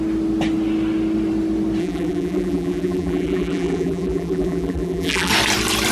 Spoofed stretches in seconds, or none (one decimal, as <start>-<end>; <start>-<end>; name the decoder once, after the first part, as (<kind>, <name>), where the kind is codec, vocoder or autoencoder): 1.8-5.3 (vocoder, BigVGAN v2)